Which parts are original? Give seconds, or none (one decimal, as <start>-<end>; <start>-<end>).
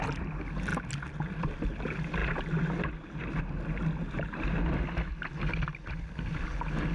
0.0-6.9